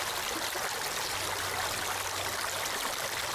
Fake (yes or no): yes